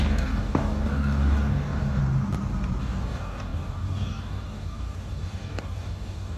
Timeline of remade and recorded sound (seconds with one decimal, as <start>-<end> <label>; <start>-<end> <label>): 0.0-2.0 remade; 2.0-2.8 recorded; 2.8-6.4 remade